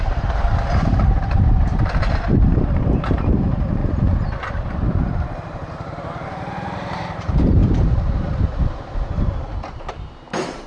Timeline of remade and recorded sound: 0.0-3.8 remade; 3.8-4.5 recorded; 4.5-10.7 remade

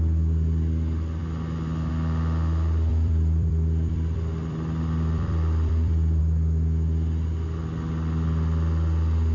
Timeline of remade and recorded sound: 0.0-1.2 recorded; 1.2-1.9 remade; 1.9-2.9 recorded; 2.9-6.2 remade; 6.2-9.3 recorded